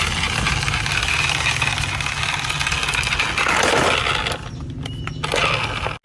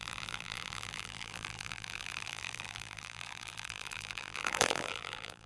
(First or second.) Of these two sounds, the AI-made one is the second